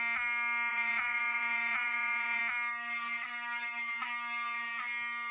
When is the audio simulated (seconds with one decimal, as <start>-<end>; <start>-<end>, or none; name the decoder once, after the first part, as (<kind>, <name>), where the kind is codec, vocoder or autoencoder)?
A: 0.7-2.4 (vocoder, Vocos)